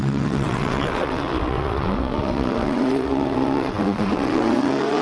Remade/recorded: remade